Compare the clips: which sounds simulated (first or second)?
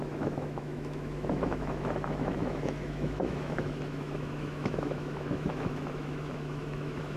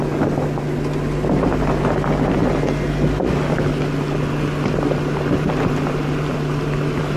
first